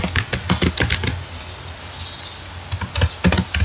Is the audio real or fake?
real